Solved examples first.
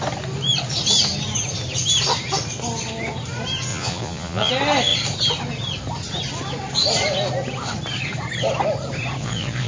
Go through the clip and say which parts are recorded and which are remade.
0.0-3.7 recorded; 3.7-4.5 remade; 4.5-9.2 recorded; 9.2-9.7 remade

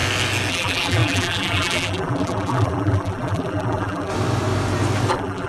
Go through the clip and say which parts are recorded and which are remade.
0.0-0.5 recorded; 0.5-4.1 remade; 4.1-5.1 recorded; 5.1-5.5 remade

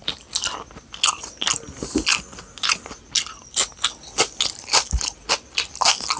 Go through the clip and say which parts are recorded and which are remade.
0.0-6.2 recorded

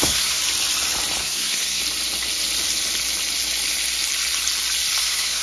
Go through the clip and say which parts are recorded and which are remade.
0.0-0.4 remade; 0.4-1.2 recorded; 1.2-1.8 remade; 1.8-5.0 recorded; 5.0-5.4 remade

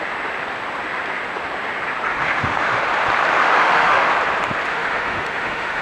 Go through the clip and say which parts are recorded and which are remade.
0.0-2.1 recorded; 2.1-2.8 remade; 2.8-3.4 recorded; 3.4-4.1 remade; 4.1-4.7 recorded; 4.7-5.8 remade

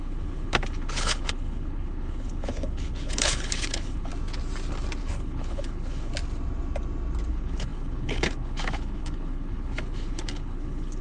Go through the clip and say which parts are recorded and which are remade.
0.0-4.1 remade; 4.1-5.0 recorded; 5.0-6.1 remade; 6.1-7.3 recorded; 7.3-11.0 remade

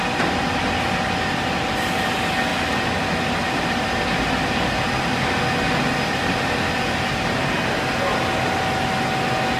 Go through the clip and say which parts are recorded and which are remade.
0.0-9.6 recorded